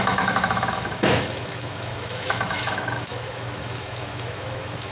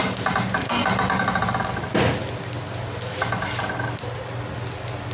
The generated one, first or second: first